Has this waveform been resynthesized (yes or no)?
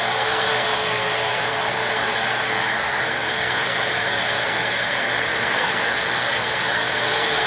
yes